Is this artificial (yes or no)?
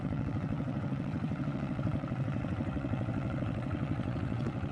yes